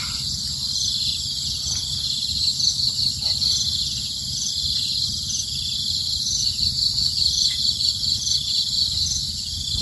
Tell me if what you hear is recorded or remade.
recorded